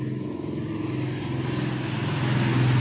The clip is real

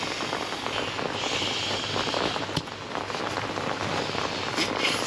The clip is real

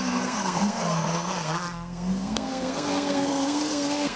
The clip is fake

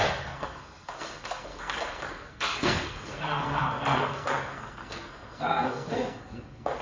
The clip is fake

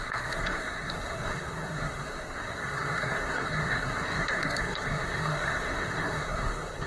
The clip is fake